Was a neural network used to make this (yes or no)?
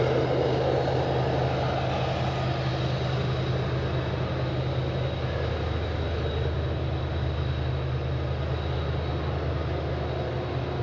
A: no